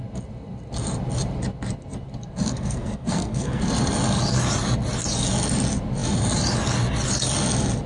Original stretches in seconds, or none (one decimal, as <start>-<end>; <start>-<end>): 0.0-2.5; 3.6-7.9